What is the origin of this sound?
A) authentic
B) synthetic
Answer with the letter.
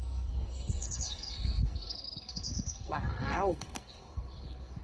B